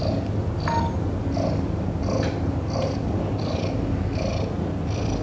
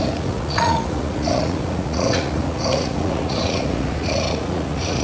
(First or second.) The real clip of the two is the first